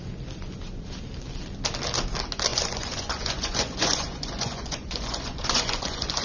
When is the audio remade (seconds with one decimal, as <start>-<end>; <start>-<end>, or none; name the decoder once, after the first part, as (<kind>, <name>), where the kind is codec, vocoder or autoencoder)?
2.5-6.2 (vocoder, Vocos)